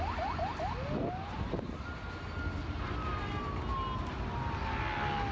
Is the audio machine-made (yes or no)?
no